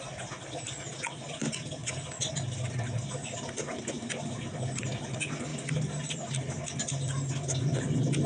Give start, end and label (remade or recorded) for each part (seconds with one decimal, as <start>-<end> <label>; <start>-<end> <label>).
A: 0.0-5.5 recorded; 5.5-6.5 remade; 6.5-8.3 recorded